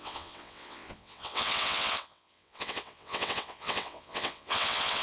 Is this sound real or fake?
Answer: fake